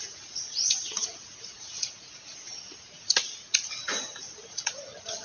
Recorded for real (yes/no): no